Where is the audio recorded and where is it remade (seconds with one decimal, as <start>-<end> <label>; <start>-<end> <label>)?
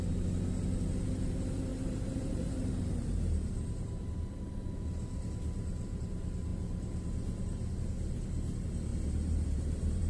0.0-1.7 recorded; 1.7-4.4 remade; 4.4-8.9 recorded; 8.9-10.1 remade